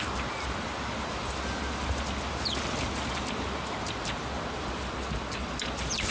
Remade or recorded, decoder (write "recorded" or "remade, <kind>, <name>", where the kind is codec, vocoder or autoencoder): recorded